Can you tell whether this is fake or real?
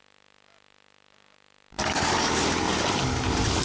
real